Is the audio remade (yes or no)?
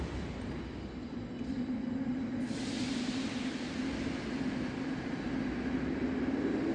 no